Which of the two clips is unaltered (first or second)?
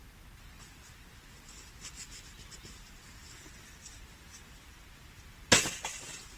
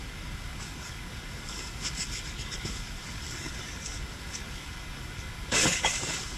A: first